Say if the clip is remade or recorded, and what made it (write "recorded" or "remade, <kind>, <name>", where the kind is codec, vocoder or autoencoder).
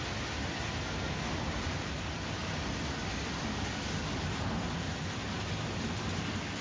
recorded